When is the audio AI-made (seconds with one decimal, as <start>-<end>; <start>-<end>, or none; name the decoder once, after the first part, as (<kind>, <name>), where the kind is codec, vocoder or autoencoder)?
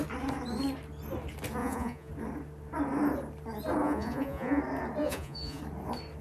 1.6-2.1 (vocoder, Vocos); 3.8-4.6; 5.0-5.6